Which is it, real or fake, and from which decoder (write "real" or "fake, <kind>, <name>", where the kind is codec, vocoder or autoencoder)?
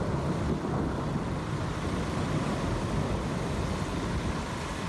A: real